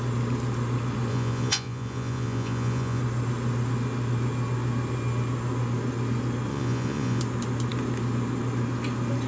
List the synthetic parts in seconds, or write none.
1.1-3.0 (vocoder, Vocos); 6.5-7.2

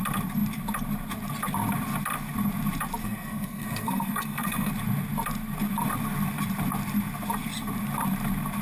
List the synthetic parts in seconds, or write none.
3.0-4.7 (codec, SNAC)

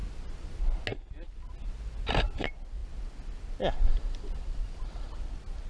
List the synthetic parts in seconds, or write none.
none

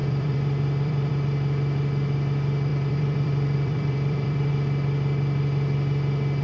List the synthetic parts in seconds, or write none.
0.0-1.1 (vocoder, BigVGAN v2); 2.7-4.5

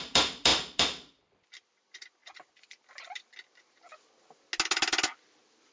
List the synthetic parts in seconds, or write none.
0.0-2.2 (vocoder, BigVGAN v2); 5.2-5.7

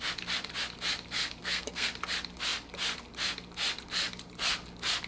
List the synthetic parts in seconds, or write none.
1.4-1.9 (codec, SNAC)

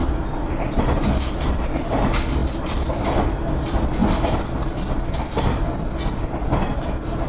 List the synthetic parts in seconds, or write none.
none